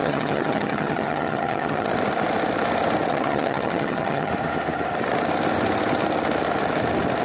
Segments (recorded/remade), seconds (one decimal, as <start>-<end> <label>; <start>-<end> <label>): 0.0-1.9 remade; 1.9-3.1 recorded; 3.1-4.3 remade; 4.3-7.2 recorded